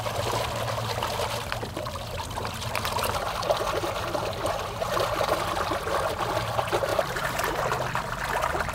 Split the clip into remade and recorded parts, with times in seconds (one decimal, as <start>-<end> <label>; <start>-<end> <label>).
0.0-6.9 recorded; 6.9-7.6 remade; 7.6-8.7 recorded